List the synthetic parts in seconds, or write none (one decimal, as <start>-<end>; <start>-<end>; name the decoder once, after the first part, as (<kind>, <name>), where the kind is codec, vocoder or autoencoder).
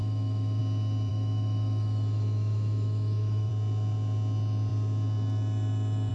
0.0-0.6 (autoencoder, DAC-VAE); 1.1-3.5